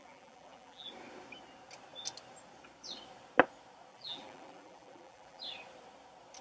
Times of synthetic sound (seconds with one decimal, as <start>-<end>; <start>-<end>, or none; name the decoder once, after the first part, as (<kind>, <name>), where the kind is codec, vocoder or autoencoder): 0.0-0.9 (vocoder, BigVGAN v2); 3.9-5.4